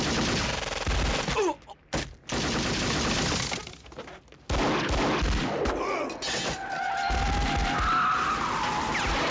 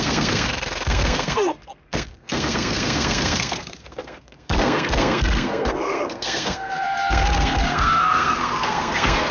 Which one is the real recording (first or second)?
first